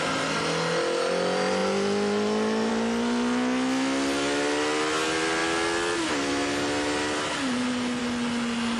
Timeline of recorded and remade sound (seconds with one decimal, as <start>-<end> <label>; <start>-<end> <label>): 0.0-8.8 recorded